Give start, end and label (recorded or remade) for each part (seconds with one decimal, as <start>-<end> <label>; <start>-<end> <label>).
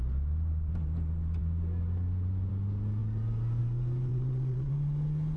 0.0-4.1 recorded; 4.1-4.7 remade; 4.7-5.4 recorded